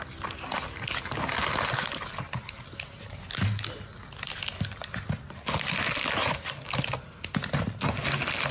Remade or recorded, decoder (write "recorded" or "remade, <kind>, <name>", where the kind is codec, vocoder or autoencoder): recorded